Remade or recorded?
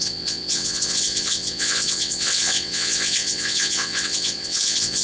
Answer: remade